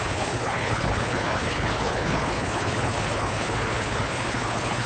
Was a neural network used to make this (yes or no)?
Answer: yes